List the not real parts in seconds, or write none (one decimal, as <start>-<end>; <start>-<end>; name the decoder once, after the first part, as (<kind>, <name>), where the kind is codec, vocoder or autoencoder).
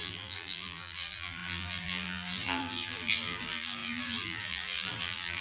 0.0-5.4 (vocoder, BigVGAN v2)